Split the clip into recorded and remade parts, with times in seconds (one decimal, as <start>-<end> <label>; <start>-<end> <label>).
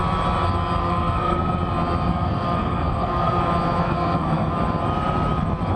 0.0-0.8 recorded; 0.8-1.4 remade; 1.4-2.1 recorded; 2.1-3.4 remade; 3.4-3.8 recorded; 3.8-4.5 remade; 4.5-5.8 recorded